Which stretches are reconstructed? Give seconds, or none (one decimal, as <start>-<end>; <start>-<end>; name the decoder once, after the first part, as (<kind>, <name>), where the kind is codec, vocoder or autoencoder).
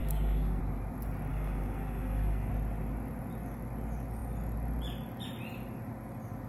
0.0-0.6 (codec, SNAC); 1.3-2.5